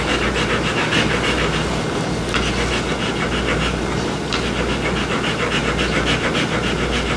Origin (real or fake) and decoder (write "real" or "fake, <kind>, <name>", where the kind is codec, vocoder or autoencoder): real